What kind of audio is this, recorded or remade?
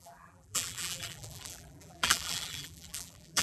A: remade